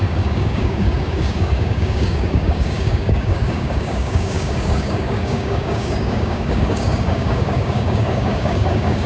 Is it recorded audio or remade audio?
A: remade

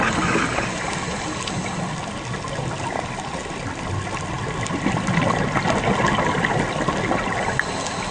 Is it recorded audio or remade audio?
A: recorded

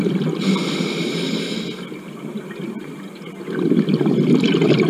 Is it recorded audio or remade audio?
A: recorded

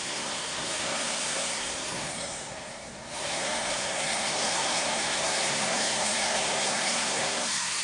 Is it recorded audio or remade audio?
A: remade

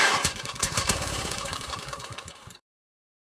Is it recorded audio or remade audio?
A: remade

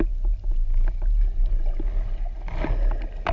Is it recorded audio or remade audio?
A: recorded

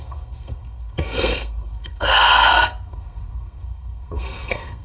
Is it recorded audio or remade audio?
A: remade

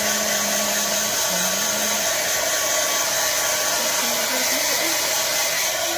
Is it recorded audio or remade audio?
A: recorded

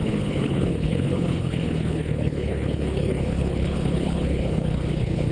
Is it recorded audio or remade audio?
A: remade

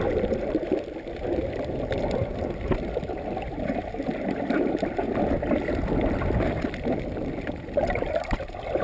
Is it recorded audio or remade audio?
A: remade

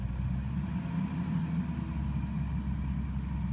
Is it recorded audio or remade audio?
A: recorded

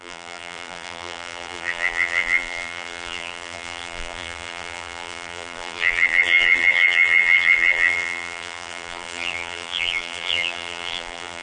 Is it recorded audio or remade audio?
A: remade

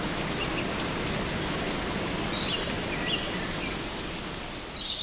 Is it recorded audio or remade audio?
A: recorded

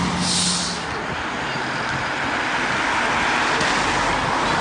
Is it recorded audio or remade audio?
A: recorded